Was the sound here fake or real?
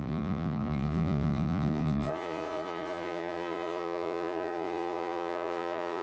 fake